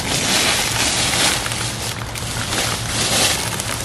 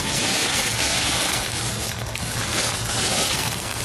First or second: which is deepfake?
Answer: second